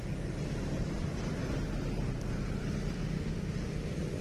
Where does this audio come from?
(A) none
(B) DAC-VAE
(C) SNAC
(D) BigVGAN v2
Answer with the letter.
A